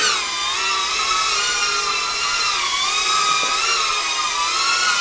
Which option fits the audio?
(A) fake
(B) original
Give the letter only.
B